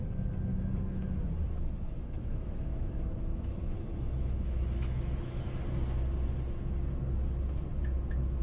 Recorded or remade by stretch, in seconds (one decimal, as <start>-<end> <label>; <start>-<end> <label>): 0.0-0.5 recorded; 0.5-5.5 remade; 5.5-7.7 recorded; 7.7-8.4 remade